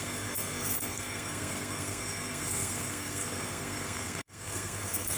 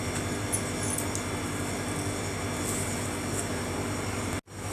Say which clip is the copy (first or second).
first